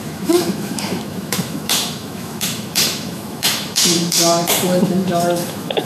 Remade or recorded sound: remade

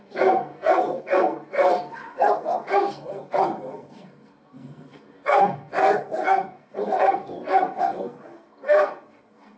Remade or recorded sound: remade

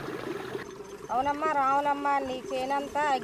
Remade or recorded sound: recorded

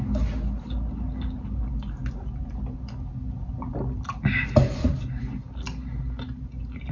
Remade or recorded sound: recorded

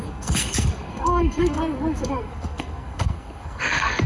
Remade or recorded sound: remade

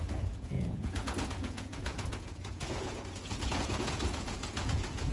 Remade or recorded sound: remade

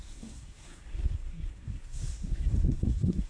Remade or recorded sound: remade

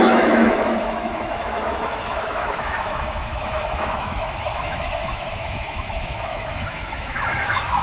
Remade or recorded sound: remade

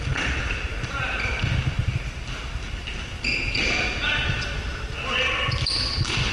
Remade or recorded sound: recorded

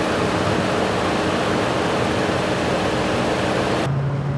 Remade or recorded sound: recorded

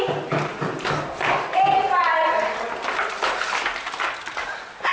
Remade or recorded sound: recorded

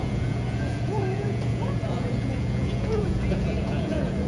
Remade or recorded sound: remade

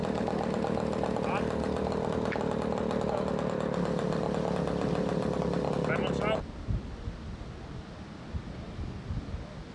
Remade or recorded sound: recorded